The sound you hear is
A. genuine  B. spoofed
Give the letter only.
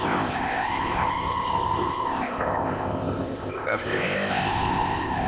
B